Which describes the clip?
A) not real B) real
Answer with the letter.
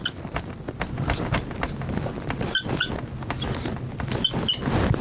B